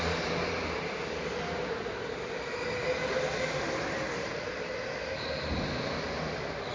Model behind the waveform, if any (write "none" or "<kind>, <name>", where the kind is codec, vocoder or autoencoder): none